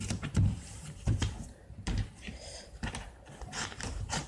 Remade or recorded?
remade